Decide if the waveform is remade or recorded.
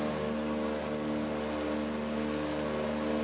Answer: recorded